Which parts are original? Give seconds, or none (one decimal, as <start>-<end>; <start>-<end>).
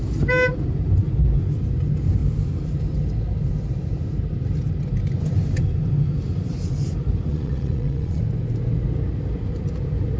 0.0-7.3; 8.2-10.2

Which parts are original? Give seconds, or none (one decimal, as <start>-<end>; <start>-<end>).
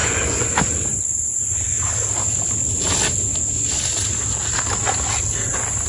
0.5-5.9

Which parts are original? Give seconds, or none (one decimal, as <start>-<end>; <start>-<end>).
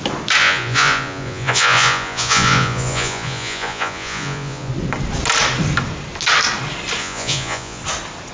0.0-0.4; 4.7-7.0; 7.8-8.3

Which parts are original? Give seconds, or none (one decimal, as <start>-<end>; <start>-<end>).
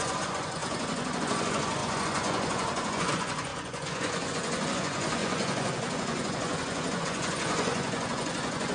none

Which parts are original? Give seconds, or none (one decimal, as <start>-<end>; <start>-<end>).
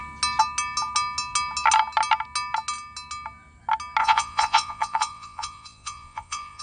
0.0-4.0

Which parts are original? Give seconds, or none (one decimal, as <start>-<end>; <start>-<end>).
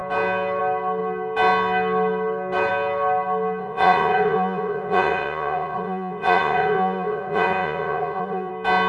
0.0-3.6; 8.5-8.9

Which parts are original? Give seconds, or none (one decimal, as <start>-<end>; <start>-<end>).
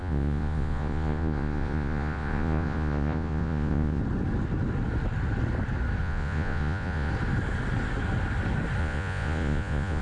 4.0-6.0; 7.1-8.8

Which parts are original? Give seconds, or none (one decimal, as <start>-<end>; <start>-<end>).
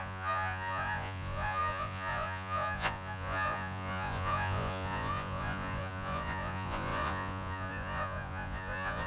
none